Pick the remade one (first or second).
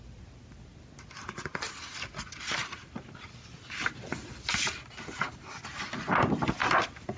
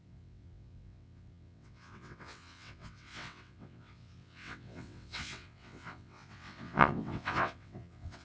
second